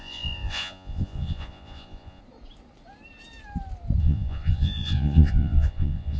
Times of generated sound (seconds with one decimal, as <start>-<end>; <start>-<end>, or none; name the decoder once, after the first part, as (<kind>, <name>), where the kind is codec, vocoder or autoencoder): 0.0-2.2 (vocoder, Vocos); 4.0-6.2